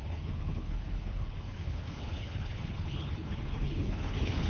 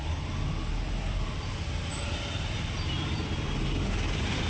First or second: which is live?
second